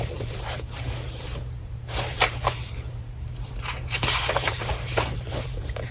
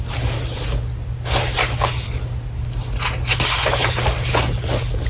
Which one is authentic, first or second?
second